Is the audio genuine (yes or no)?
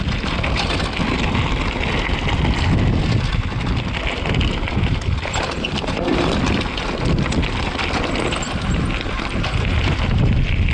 yes